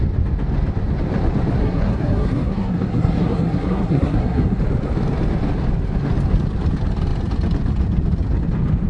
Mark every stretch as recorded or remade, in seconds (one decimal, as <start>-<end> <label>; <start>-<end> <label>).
0.0-1.6 recorded; 1.6-4.6 remade; 4.6-8.9 recorded